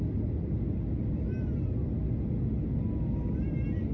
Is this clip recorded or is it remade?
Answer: recorded